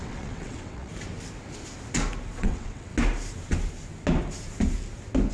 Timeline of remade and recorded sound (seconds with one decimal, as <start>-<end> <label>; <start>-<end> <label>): 0.0-0.9 remade; 0.9-2.4 recorded; 2.4-2.9 remade; 2.9-5.3 recorded